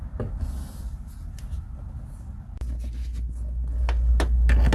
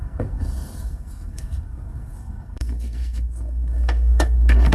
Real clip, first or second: first